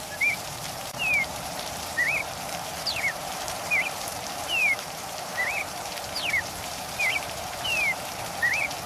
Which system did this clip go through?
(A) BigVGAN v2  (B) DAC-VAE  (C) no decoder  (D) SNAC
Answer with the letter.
A